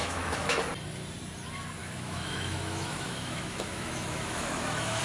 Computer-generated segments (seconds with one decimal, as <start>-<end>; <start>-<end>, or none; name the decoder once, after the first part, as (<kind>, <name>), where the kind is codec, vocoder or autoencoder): 0.0-0.6 (autoencoder, DAC-VAE); 1.8-5.0